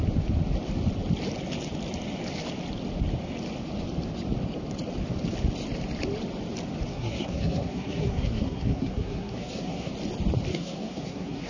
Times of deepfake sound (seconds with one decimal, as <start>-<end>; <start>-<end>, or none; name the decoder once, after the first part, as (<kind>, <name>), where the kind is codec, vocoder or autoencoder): 6.9-9.9 (codec, SNAC); 10.5-11.5